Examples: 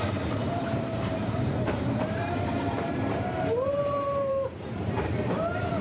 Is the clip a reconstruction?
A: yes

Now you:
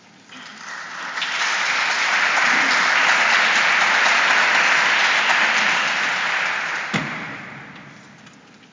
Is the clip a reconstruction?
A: no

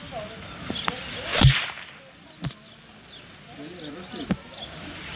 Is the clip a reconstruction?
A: no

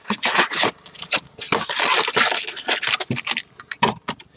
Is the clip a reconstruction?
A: no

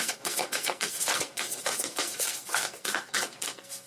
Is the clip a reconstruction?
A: yes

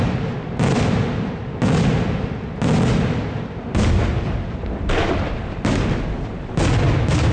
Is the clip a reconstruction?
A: no